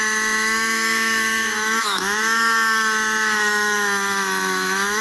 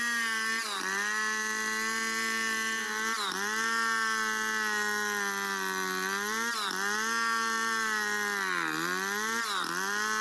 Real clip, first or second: second